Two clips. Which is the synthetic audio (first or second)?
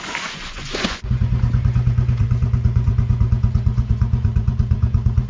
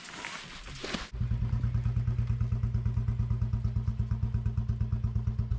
first